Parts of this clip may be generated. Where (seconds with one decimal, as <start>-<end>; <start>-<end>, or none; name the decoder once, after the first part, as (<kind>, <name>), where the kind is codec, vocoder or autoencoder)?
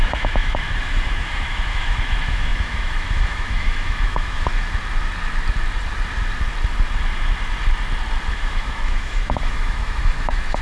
0.0-4.5 (autoencoder, DAC-VAE); 8.3-10.6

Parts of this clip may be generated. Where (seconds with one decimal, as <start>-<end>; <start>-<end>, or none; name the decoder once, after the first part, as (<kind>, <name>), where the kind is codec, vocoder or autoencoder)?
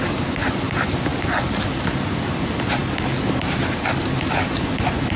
none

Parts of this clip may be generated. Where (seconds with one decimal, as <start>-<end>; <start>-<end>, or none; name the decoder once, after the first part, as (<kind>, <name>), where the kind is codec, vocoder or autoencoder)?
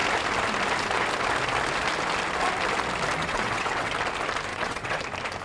3.2-3.9 (vocoder, WaveNeXt); 4.5-5.0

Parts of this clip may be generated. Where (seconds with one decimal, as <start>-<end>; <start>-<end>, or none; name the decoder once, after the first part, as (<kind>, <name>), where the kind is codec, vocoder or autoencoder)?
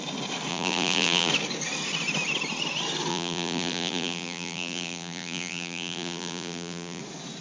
0.5-1.3 (vocoder, BigVGAN v2); 3.1-7.0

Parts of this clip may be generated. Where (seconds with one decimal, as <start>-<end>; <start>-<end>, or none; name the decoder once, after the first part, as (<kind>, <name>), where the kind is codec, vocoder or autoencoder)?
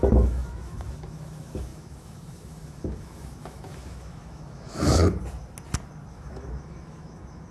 0.0-5.0 (autoencoder, DAC-VAE); 6.1-7.5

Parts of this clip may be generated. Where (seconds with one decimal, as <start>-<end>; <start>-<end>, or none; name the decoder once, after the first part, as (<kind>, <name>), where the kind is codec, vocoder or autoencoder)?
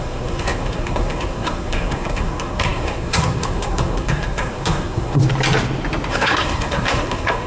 0.0-5.2 (codec, SNAC); 6.1-7.5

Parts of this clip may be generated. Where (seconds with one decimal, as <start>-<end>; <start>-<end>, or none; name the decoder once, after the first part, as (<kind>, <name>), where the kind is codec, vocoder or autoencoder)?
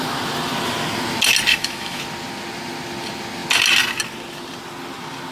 1.5-2.0 (autoencoder, DAC-VAE)